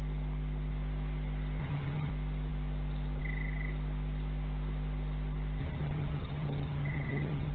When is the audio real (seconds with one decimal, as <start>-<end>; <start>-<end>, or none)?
0.0-1.6; 2.1-5.6